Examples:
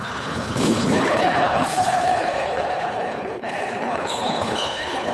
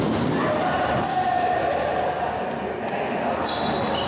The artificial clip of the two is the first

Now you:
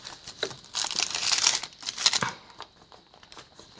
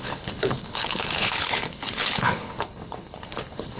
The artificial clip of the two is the second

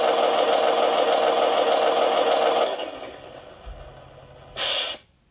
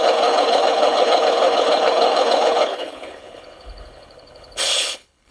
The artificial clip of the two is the second